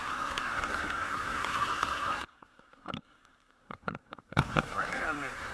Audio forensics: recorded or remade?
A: remade